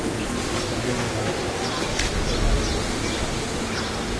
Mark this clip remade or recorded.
recorded